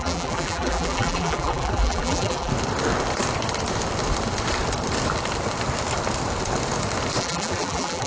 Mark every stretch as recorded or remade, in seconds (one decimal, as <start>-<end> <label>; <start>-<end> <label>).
0.0-2.5 remade; 2.5-7.2 recorded; 7.2-8.1 remade